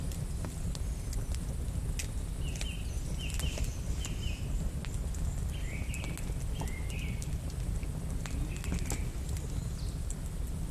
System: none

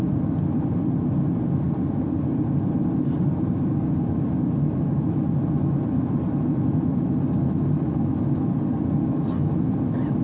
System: none